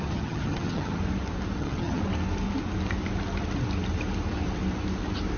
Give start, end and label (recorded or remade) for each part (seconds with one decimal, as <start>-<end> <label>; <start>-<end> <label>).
0.0-1.0 remade; 1.0-1.6 recorded; 1.6-2.0 remade; 2.0-5.4 recorded